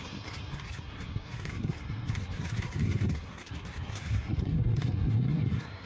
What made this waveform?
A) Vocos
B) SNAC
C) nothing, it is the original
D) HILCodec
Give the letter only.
B